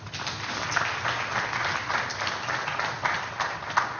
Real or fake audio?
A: real